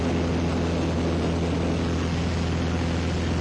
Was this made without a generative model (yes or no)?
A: yes